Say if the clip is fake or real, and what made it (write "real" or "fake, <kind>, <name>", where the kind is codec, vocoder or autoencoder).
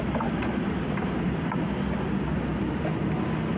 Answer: real